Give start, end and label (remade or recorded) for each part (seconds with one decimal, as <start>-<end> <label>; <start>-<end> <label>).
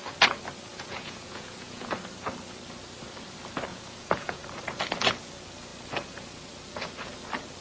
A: 0.0-0.7 recorded; 0.7-1.9 remade; 1.9-3.7 recorded; 3.7-4.4 remade; 4.4-7.6 recorded